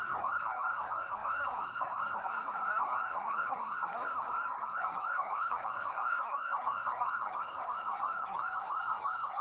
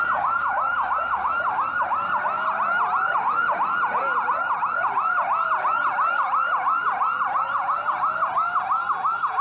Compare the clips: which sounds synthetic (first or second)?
first